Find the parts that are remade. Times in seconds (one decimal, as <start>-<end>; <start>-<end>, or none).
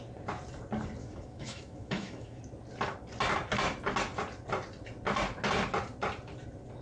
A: 1.0-2.4